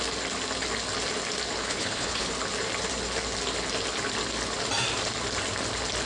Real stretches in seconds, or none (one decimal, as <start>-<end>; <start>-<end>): 0.0-1.6; 2.3-6.1